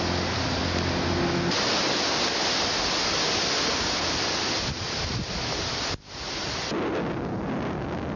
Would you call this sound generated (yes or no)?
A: no